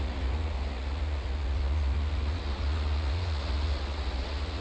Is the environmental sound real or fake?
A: fake